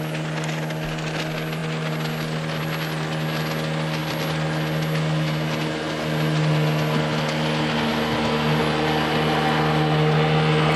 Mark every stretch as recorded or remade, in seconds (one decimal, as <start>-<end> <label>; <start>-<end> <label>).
0.0-7.9 recorded; 7.9-8.6 remade; 8.6-10.8 recorded